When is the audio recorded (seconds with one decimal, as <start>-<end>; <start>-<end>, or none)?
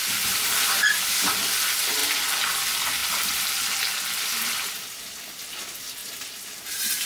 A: 0.0-6.0